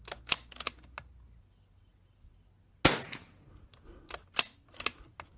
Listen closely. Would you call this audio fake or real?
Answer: real